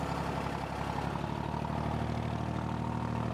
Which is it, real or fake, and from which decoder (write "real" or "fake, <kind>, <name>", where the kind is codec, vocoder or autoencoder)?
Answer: real